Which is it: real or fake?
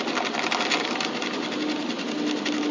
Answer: real